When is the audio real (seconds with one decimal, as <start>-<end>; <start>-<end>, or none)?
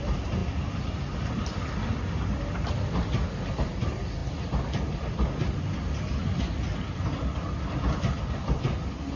0.0-9.2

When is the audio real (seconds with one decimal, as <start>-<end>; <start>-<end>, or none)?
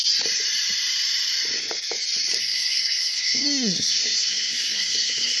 0.0-2.4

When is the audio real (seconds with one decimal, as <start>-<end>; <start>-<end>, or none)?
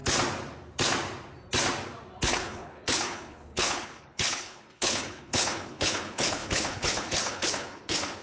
0.0-2.3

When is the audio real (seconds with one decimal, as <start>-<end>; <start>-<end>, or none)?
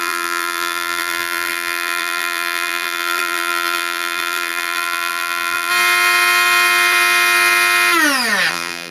5.7-8.5